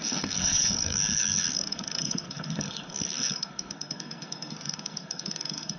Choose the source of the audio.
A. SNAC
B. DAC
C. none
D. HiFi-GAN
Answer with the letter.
A